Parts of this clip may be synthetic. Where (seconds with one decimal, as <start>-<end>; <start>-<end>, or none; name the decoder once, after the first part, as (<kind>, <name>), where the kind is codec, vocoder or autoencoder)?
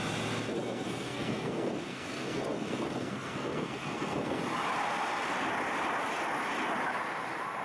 0.5-4.4 (codec, SNAC)